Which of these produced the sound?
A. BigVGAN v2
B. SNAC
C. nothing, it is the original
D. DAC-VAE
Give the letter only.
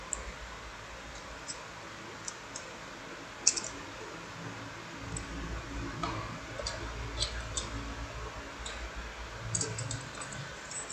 C